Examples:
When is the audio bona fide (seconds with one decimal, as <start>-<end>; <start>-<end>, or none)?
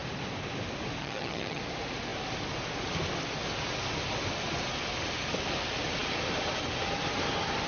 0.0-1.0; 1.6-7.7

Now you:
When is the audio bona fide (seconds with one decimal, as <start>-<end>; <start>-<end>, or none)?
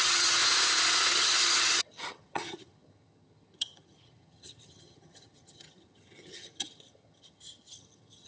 0.4-1.1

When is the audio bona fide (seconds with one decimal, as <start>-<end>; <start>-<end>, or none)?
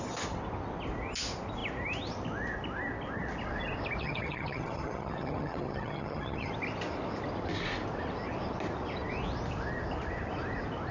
0.0-4.0; 6.5-10.9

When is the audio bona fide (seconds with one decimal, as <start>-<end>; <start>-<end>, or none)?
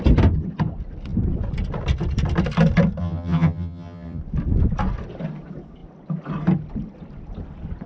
0.0-3.0; 4.2-7.9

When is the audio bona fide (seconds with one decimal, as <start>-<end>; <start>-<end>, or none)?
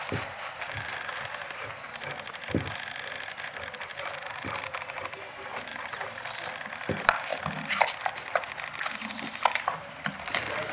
0.0-10.7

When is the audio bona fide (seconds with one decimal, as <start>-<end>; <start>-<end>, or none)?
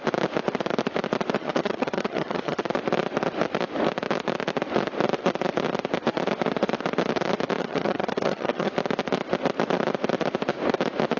0.0-1.4; 2.6-7.6; 8.7-11.2